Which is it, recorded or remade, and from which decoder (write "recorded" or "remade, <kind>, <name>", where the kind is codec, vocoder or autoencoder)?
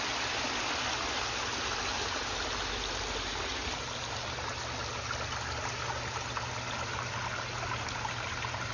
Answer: recorded